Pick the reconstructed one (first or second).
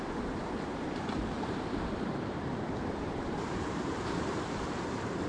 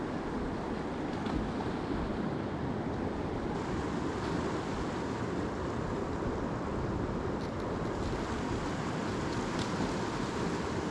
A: first